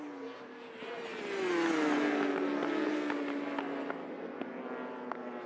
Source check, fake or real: real